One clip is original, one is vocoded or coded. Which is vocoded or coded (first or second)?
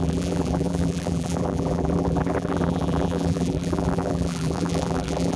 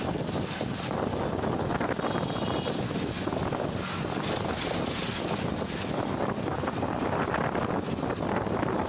first